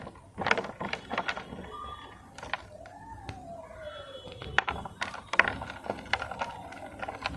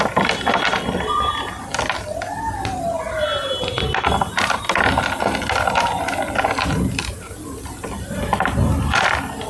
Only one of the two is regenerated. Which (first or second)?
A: first